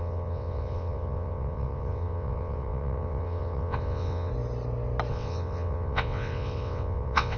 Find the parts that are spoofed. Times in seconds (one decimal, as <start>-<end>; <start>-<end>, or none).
0.0-4.3; 5.1-7.4